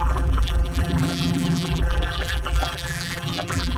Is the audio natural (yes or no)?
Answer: no